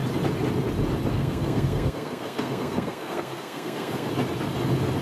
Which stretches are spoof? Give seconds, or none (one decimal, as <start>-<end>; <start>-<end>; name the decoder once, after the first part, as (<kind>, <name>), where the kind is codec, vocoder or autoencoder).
1.1-4.1 (codec, SNAC)